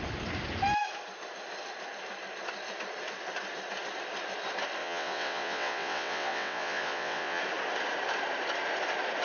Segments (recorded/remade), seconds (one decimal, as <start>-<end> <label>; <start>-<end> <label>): 0.0-4.8 recorded; 4.8-7.4 remade; 7.4-9.2 recorded